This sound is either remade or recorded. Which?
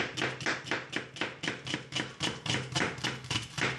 recorded